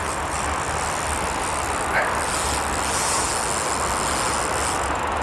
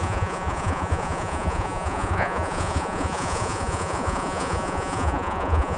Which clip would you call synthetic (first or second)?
second